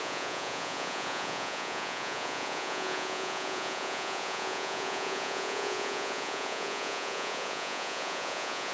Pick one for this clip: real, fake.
fake